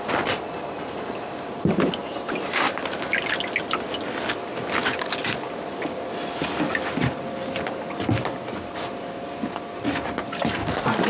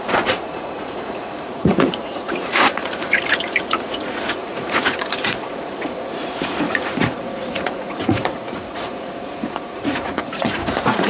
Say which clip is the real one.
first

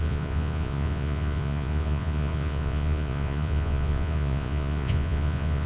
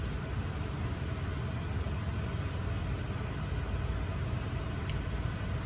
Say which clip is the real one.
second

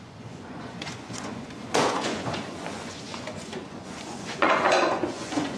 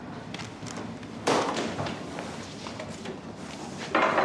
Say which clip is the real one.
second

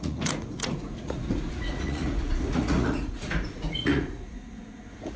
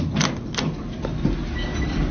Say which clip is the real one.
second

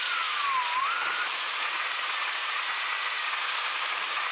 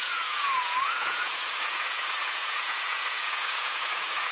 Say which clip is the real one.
first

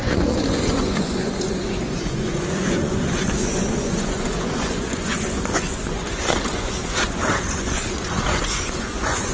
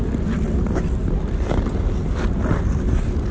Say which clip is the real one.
second